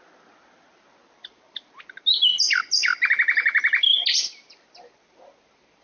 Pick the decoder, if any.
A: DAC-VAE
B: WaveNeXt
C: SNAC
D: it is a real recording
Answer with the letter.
D